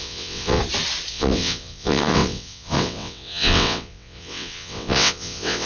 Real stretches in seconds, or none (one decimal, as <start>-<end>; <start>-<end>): 0.6-1.1